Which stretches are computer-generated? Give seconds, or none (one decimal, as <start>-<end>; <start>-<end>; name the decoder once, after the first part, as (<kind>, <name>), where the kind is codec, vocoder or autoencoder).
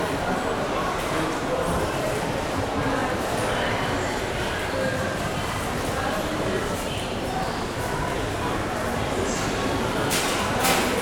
none